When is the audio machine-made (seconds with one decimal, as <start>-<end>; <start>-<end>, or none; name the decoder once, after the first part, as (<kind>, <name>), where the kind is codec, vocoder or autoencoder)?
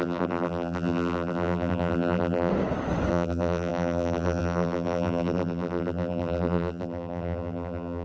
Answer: 0.0-2.5 (vocoder, BigVGAN v2); 3.1-8.0